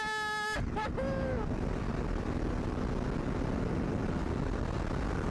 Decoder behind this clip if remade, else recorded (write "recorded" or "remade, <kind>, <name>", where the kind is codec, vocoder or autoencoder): recorded